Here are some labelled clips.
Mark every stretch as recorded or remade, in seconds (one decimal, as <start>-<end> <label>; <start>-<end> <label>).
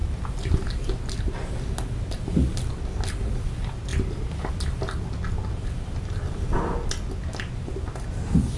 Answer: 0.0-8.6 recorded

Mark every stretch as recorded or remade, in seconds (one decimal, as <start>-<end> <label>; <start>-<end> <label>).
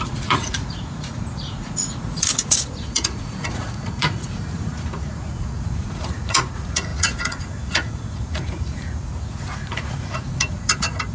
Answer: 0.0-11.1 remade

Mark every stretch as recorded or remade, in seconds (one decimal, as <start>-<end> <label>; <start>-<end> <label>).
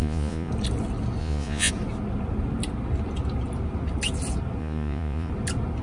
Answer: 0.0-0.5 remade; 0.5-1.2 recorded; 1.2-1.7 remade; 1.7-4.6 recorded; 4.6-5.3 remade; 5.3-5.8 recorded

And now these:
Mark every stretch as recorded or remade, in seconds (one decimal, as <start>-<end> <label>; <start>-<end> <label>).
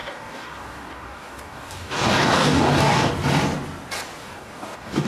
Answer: 0.0-3.1 remade; 3.1-4.2 recorded; 4.2-5.1 remade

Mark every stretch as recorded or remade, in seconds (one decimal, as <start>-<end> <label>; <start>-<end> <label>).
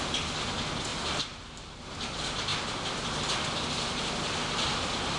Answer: 0.0-0.9 recorded; 0.9-1.9 remade; 1.9-5.2 recorded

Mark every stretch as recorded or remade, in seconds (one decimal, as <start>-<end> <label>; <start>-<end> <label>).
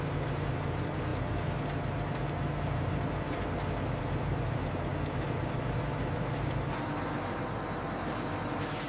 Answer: 0.0-8.9 recorded